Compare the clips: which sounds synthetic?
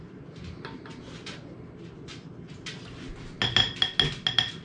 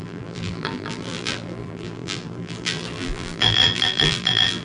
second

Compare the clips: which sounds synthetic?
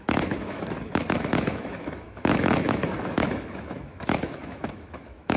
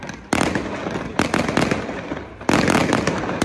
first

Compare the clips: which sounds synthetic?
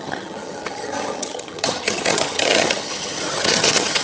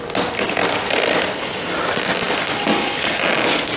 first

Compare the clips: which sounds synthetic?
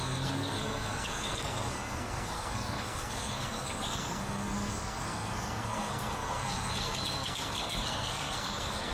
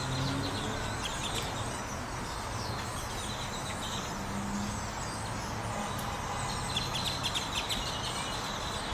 first